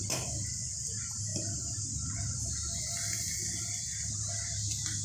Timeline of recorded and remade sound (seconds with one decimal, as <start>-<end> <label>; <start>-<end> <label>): 0.0-5.0 recorded